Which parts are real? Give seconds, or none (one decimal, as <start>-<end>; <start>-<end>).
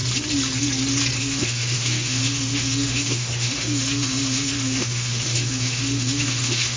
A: 0.0-1.2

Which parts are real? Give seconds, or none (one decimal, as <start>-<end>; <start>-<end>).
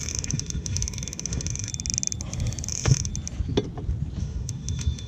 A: 1.7-2.7; 3.1-4.2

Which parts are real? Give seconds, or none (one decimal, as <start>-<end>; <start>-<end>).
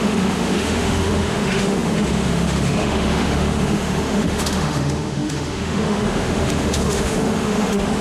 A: none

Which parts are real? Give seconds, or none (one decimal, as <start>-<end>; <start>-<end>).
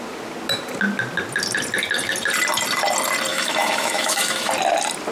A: 0.0-3.3; 4.5-5.1